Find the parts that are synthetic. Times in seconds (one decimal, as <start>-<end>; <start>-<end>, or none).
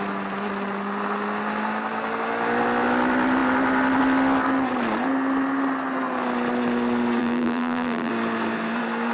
7.2-8.1